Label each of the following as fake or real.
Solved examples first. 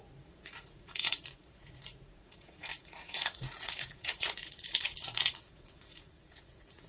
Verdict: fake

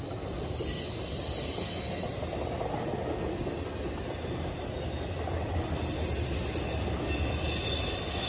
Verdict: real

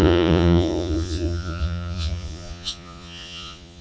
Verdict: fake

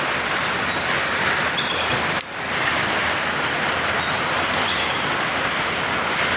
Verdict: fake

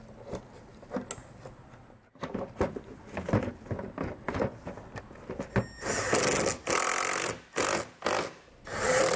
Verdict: real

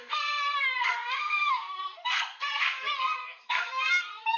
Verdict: fake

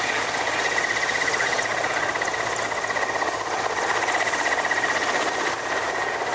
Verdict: real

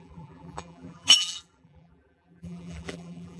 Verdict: fake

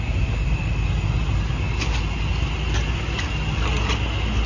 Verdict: real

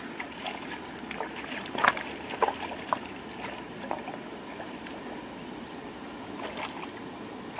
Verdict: real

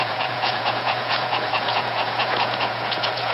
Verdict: fake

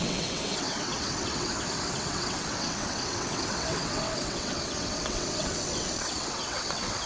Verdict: fake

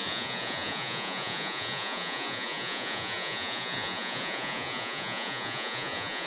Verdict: fake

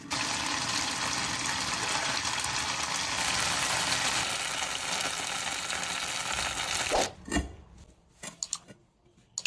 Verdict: real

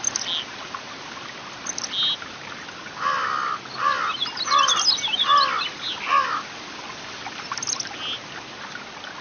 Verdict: real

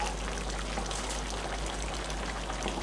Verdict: real